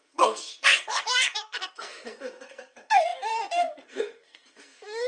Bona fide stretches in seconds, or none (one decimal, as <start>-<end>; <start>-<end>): none

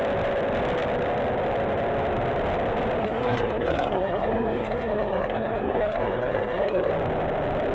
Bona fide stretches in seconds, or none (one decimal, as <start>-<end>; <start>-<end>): 0.0-3.0; 6.9-7.7